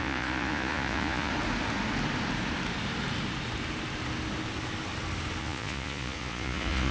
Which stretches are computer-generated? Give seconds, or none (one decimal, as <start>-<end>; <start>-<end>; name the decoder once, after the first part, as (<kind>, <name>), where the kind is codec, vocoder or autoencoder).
0.0-1.3 (vocoder, Vocos); 5.4-6.9